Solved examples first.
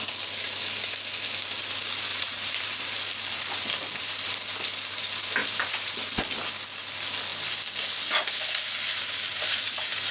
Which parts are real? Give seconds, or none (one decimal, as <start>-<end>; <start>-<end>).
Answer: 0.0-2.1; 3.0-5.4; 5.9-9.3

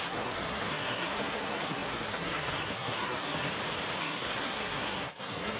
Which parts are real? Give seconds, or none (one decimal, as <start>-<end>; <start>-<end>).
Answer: 3.5-4.0

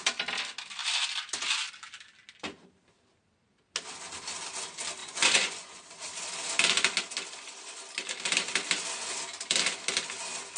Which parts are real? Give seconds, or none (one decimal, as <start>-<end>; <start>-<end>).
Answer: 0.0-5.0; 5.8-10.6

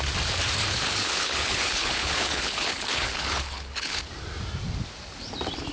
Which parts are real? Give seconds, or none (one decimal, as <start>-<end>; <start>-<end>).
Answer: 0.0-0.7; 4.1-5.7

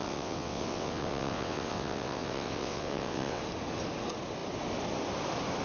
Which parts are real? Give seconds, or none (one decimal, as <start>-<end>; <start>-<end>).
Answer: 3.4-5.6

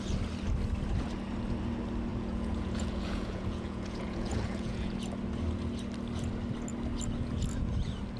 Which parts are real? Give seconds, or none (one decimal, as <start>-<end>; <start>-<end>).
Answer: 0.0-2.1; 4.9-8.2